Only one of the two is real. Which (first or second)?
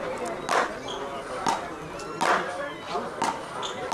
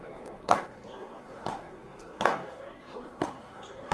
first